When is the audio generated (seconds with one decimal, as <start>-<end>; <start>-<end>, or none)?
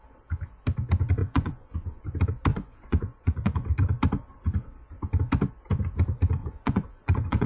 1.2-2.0; 2.5-3.7; 6.4-7.5